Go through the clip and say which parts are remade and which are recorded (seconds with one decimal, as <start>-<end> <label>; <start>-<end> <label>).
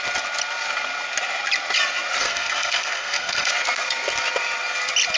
0.0-2.2 recorded; 2.2-3.5 remade; 3.5-5.2 recorded